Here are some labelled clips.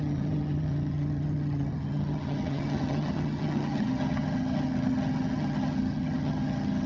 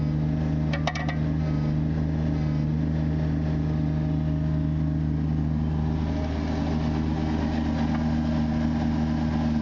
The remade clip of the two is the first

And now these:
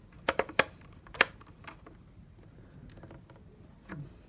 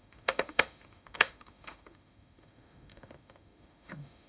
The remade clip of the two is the second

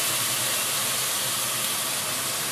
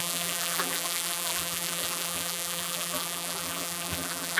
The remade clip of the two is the second